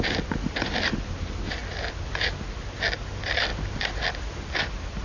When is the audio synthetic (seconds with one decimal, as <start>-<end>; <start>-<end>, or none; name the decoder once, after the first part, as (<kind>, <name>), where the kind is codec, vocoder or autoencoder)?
none